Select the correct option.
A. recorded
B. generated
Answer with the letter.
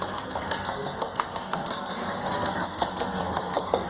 B